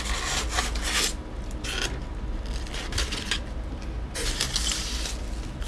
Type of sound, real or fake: real